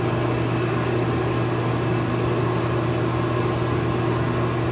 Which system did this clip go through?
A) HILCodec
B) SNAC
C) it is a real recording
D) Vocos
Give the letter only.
C